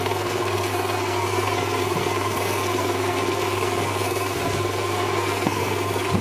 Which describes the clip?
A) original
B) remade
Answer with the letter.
B